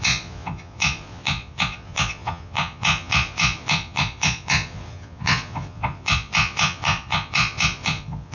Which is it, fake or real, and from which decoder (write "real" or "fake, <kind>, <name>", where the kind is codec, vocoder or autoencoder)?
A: fake, vocoder, Vocos